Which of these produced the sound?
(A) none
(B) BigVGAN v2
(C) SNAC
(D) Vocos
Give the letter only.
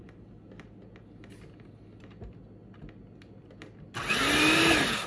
A